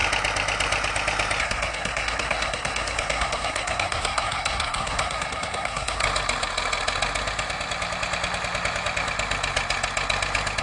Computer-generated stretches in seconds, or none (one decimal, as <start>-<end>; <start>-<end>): 1.4-6.0